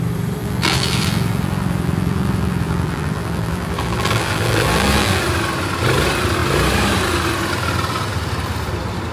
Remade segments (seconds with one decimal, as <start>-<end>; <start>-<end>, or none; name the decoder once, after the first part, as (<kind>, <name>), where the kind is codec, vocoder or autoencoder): 0.4-5.2 (vocoder, BigVGAN v2)